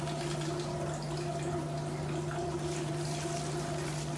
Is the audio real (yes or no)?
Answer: yes